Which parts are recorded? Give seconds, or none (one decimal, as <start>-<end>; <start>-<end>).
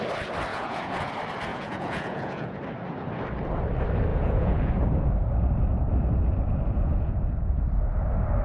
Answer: 0.0-0.5; 1.1-1.5; 2.6-4.1; 4.7-6.8; 7.5-8.4